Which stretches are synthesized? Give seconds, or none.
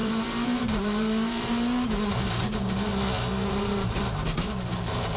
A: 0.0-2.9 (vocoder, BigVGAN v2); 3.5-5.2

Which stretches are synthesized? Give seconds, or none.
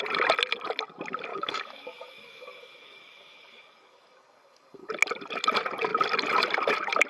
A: 1.3-4.9 (codec, DAC)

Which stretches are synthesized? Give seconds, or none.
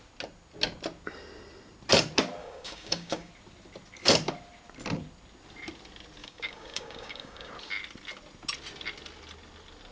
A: 2.4-3.3 (codec, DAC); 6.2-7.5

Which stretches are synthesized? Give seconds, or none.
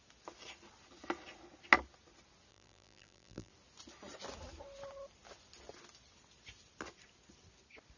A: 2.5-3.5 (vocoder, BigVGAN v2)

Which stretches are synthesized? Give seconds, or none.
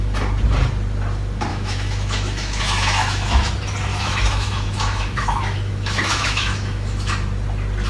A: 1.5-3.5 (autoencoder, DAC-VAE); 3.9-7.1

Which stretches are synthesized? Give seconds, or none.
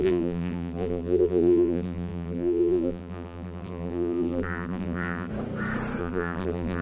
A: 0.0-5.3 (vocoder, BigVGAN v2); 6.0-6.8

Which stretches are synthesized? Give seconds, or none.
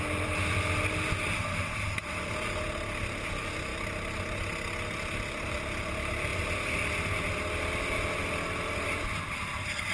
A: none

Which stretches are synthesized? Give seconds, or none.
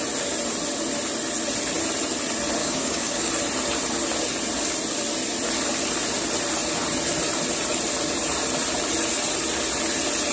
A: 2.6-3.3 (codec, DAC)